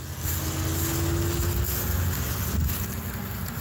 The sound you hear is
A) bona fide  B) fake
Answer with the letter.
A